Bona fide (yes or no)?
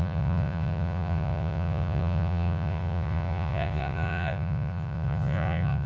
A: no